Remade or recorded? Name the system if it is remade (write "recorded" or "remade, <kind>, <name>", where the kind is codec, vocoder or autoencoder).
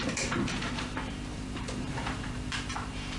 remade, vocoder, BigVGAN v2